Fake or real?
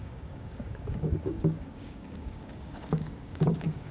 fake